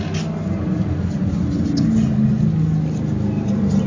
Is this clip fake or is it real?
real